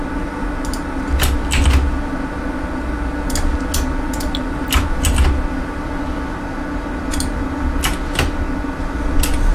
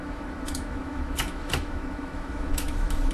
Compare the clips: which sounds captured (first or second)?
first